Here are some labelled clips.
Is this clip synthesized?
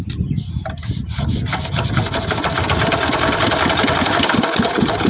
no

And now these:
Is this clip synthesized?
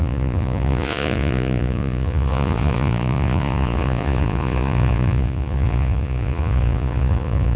yes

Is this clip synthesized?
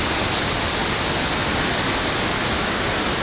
no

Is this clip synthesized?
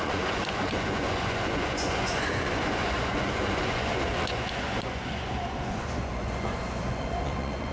yes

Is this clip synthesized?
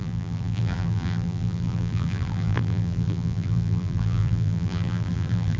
yes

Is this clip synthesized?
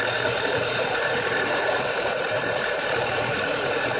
yes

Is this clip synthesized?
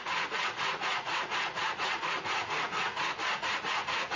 yes